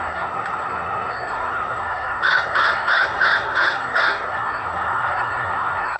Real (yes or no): no